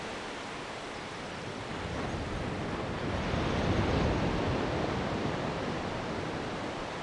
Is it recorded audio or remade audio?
recorded